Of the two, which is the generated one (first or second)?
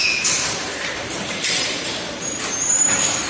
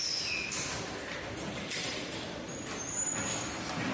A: first